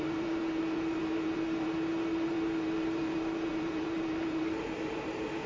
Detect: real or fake fake